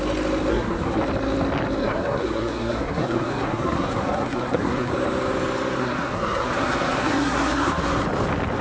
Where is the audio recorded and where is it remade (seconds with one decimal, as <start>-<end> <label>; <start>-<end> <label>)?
0.0-0.5 recorded; 0.5-1.0 remade; 1.0-1.8 recorded; 1.8-4.9 remade; 4.9-5.8 recorded; 5.8-7.8 remade; 7.8-8.6 recorded